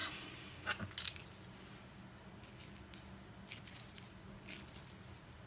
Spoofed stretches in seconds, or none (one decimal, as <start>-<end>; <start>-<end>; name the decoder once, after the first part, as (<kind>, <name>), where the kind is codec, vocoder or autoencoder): 3.3-5.5 (vocoder, BigVGAN v2)